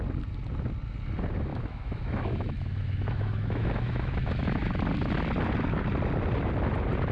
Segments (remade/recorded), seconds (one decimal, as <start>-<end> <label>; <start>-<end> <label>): 0.0-1.5 recorded; 1.5-4.7 remade; 4.7-7.1 recorded